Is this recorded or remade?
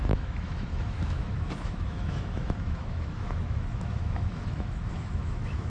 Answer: remade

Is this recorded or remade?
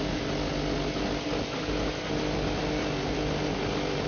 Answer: recorded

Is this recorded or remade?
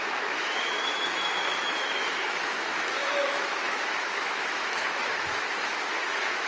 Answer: remade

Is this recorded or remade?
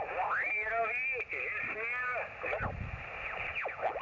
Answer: recorded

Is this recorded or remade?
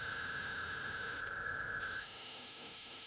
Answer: remade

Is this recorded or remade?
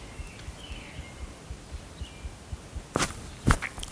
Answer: recorded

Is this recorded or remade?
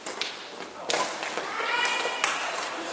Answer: recorded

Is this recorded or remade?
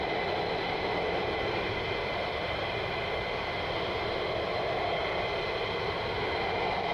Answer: recorded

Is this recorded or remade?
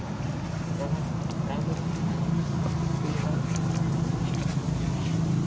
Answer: recorded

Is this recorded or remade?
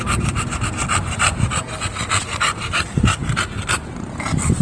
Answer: recorded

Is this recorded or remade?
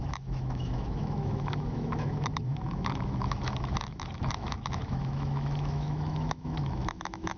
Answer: remade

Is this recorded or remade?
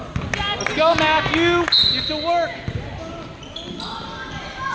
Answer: recorded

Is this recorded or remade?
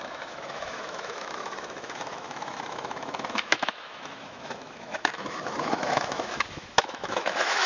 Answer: remade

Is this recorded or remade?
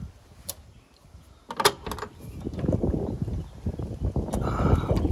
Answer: recorded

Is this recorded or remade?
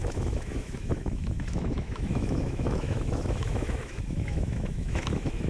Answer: remade